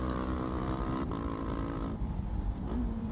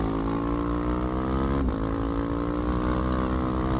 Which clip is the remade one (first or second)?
first